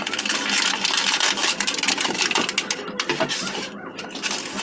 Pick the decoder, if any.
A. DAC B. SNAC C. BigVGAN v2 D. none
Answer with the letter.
D